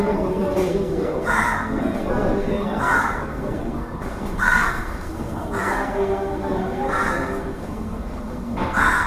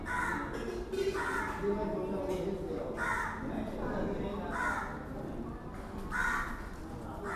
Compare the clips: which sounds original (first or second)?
second